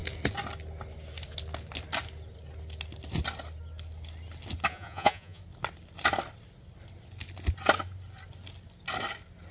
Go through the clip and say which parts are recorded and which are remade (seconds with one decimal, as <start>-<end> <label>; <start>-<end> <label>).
0.0-4.7 recorded; 4.7-5.4 remade; 5.4-9.5 recorded